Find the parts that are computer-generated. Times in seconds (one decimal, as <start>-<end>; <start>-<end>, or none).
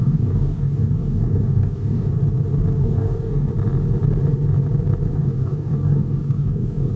0.0-2.2; 2.8-3.5; 5.1-7.0